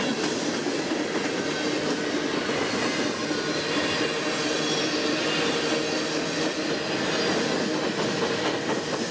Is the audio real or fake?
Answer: real